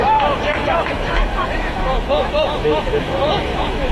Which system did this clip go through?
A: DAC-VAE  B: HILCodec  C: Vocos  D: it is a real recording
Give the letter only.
A